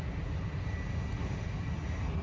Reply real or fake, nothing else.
real